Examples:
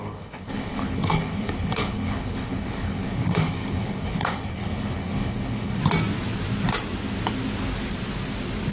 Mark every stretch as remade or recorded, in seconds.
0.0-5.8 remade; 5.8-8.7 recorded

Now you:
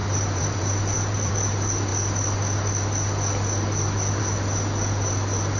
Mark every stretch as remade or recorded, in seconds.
0.0-1.3 remade; 1.3-5.6 recorded

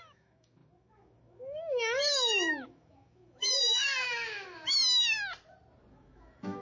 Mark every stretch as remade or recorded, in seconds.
0.0-4.8 remade; 4.8-5.9 recorded; 5.9-6.6 remade

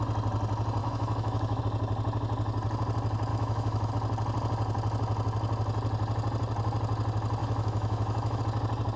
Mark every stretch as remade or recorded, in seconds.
0.0-0.8 recorded; 0.8-1.6 remade; 1.6-3.3 recorded; 3.3-3.9 remade; 3.9-7.4 recorded; 7.4-8.4 remade; 8.4-9.0 recorded

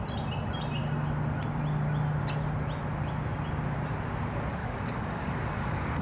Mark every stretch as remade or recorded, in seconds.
0.0-4.6 recorded; 4.6-6.0 remade